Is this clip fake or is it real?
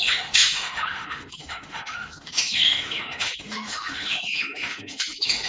fake